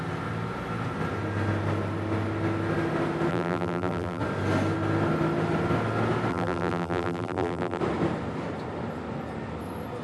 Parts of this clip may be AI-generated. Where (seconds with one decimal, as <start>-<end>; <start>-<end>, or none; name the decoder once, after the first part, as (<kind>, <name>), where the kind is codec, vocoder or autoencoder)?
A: 3.3-4.2 (vocoder, BigVGAN v2); 6.3-7.8